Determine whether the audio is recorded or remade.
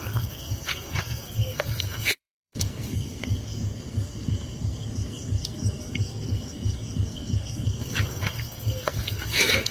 remade